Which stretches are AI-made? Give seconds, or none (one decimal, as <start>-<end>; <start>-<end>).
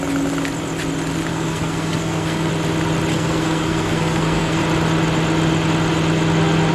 1.3-2.5; 3.1-4.6